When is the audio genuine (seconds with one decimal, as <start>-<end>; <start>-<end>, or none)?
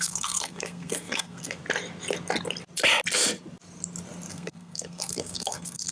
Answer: 1.6-4.3